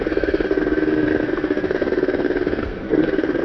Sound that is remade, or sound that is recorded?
remade